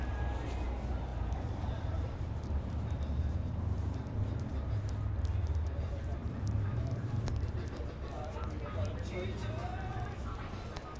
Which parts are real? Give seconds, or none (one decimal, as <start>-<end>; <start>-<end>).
0.0-1.1; 4.4-6.2; 7.9-11.0